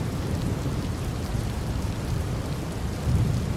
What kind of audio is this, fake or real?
fake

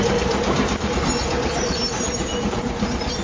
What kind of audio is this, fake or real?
fake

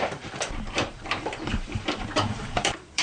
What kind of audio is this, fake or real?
fake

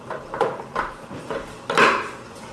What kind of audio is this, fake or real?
fake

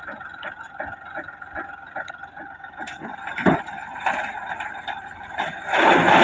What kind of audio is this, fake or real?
real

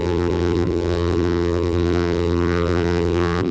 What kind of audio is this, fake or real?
fake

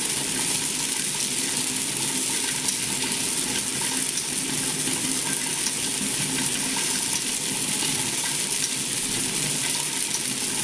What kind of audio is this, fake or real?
real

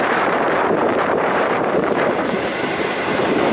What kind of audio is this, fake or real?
fake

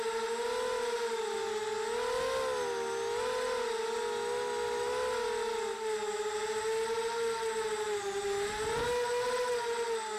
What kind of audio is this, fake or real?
real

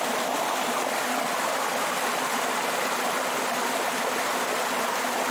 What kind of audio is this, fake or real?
real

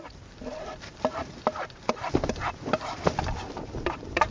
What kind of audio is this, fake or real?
fake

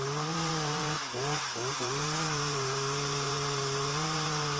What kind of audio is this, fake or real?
fake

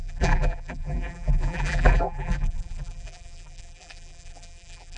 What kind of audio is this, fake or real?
fake